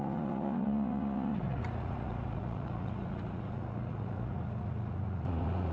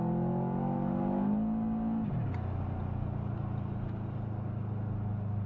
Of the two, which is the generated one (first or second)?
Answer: first